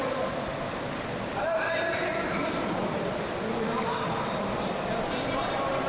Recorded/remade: remade